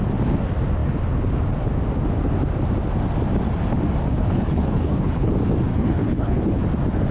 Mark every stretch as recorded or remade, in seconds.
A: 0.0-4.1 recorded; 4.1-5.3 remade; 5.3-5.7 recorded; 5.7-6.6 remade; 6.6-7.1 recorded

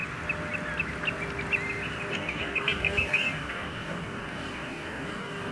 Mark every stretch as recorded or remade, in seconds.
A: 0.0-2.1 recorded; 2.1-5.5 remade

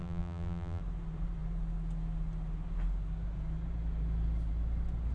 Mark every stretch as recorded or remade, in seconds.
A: 0.0-0.8 remade; 0.8-5.1 recorded

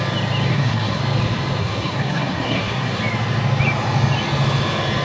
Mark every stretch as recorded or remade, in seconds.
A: 0.0-0.5 recorded; 0.5-1.0 remade; 1.0-1.6 recorded; 1.6-3.0 remade; 3.0-5.0 recorded

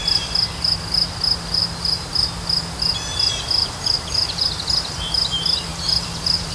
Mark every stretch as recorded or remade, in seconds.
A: 0.0-1.6 recorded; 1.6-2.3 remade; 2.3-3.6 recorded; 3.6-4.4 remade; 4.4-5.7 recorded; 5.7-6.5 remade

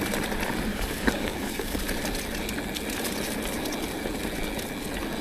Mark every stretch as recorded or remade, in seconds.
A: 0.0-0.7 recorded; 0.7-1.8 remade; 1.8-5.2 recorded

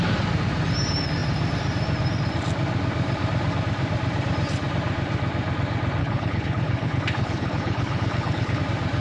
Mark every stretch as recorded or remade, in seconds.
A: 0.0-6.0 recorded; 6.0-8.6 remade; 8.6-9.0 recorded

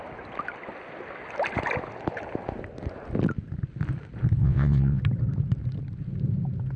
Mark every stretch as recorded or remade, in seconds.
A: 0.0-4.4 recorded; 4.4-5.0 remade; 5.0-6.8 recorded